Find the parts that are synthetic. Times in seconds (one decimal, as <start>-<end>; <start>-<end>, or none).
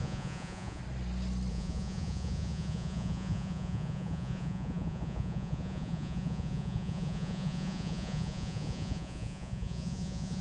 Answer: 0.0-0.8; 1.5-10.4